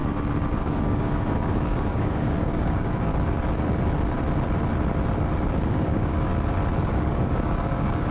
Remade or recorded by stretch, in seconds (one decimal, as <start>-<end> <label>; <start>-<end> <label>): 0.0-0.6 recorded; 0.6-3.1 remade; 3.1-5.5 recorded; 5.5-6.3 remade; 6.3-6.9 recorded; 6.9-8.1 remade